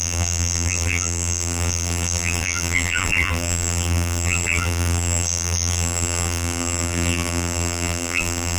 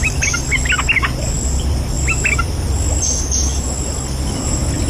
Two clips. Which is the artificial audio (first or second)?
first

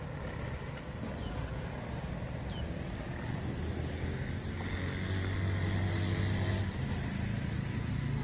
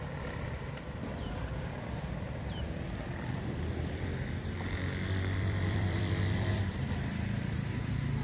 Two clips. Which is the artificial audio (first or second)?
second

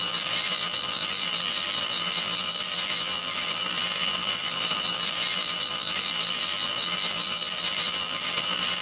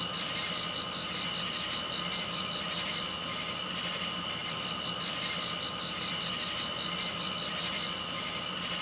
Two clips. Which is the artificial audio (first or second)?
first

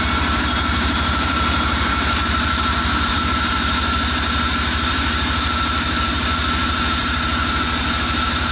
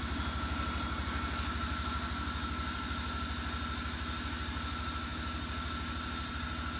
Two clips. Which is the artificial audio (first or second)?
first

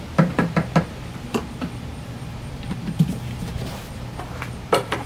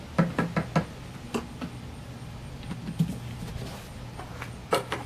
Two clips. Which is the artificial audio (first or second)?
first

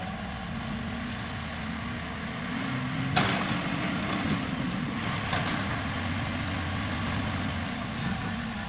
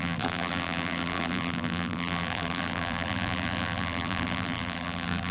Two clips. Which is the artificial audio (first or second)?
second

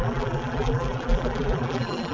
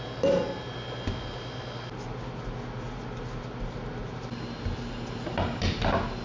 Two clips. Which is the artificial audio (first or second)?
first